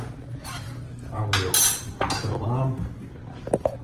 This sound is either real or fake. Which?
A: real